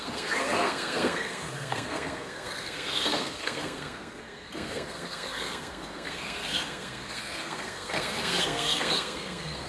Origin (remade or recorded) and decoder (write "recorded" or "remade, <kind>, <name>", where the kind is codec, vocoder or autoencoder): remade, codec, SNAC